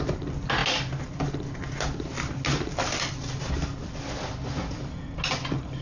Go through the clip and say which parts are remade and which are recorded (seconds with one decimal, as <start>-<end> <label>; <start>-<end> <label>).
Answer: 0.0-5.8 recorded